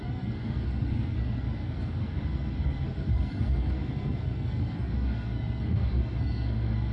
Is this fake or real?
fake